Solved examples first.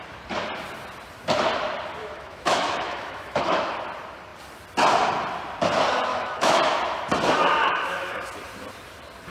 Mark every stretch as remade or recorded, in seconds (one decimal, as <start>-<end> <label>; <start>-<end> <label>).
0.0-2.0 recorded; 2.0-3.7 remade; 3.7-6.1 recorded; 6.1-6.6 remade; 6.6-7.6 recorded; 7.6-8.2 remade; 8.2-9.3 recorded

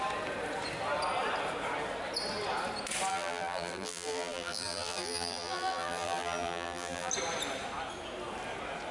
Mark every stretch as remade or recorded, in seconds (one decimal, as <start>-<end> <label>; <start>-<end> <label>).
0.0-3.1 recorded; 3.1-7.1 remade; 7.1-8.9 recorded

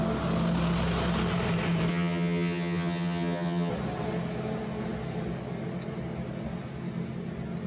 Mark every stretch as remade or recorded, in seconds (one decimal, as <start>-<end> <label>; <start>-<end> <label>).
0.0-1.9 recorded; 1.9-3.7 remade; 3.7-7.7 recorded

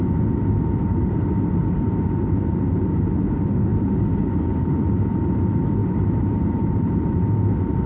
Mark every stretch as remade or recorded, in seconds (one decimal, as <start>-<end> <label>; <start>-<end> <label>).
0.0-3.7 recorded; 3.7-4.2 remade; 4.2-5.8 recorded; 5.8-6.9 remade; 6.9-7.9 recorded